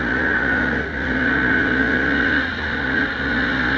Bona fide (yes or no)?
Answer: no